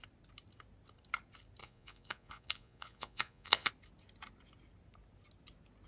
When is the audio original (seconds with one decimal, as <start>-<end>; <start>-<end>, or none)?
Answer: 0.0-1.6; 3.7-5.9